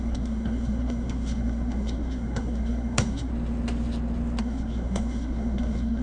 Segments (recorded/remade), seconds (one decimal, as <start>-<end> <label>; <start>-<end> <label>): 0.0-3.3 remade; 3.3-4.4 recorded; 4.4-6.0 remade